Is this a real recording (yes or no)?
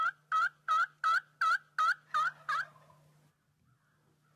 yes